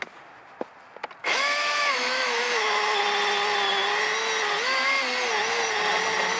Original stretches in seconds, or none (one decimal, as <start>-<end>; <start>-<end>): 0.0-1.2; 3.0-6.4

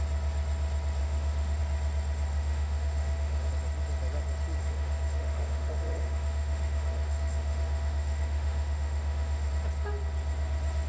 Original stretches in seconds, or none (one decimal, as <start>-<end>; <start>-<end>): 0.0-1.0; 1.6-2.3; 3.5-4.6; 9.5-10.9

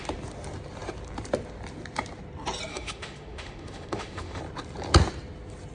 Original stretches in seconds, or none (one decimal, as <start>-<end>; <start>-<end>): 0.0-2.7; 4.4-5.7

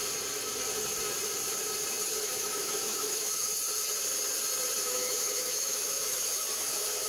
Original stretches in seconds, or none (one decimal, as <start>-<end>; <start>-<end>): 0.0-2.0; 3.5-4.8

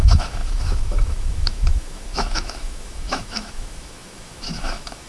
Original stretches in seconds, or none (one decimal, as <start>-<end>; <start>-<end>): none